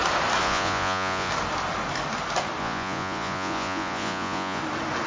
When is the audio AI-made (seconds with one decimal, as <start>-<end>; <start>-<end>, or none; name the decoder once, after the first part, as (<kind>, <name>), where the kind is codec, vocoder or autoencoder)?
0.4-1.3 (vocoder, Vocos); 2.6-4.6